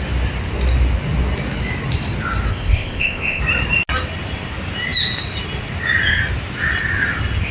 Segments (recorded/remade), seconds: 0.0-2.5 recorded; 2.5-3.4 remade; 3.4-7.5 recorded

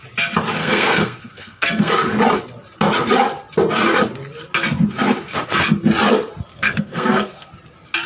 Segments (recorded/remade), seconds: 0.0-0.6 recorded; 0.6-1.9 remade; 1.9-6.5 recorded; 6.5-7.5 remade; 7.5-8.1 recorded